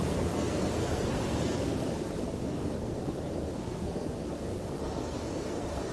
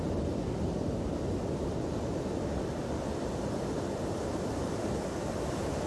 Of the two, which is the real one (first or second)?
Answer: second